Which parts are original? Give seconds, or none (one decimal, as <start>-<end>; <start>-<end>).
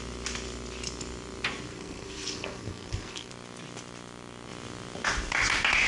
0.0-1.7; 3.3-5.9